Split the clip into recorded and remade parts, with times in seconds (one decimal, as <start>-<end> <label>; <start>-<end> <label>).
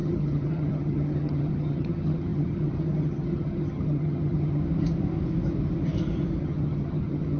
0.0-4.6 remade; 4.6-6.4 recorded; 6.4-7.4 remade